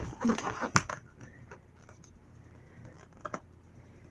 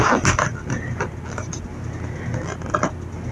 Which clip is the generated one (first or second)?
first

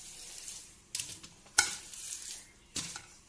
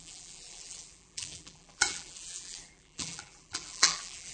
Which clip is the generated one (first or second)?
second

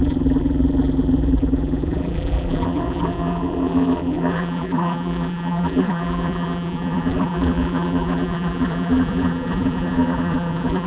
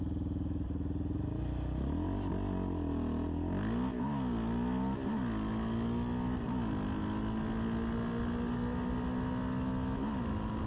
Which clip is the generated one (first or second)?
first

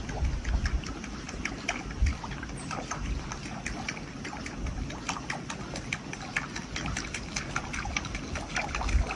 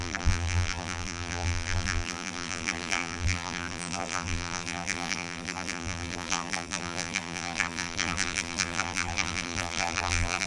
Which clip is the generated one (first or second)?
second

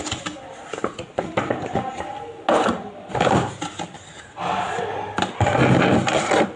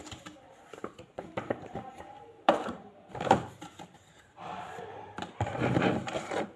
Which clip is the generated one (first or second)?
second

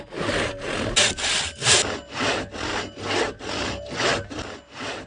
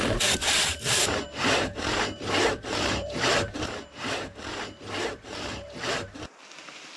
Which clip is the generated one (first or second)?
second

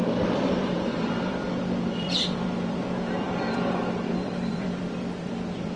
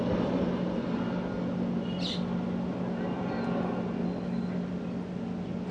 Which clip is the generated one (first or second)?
first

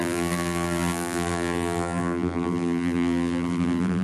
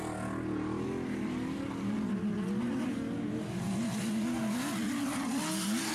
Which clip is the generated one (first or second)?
first